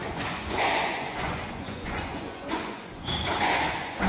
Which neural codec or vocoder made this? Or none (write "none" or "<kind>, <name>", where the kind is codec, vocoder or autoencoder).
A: vocoder, Vocos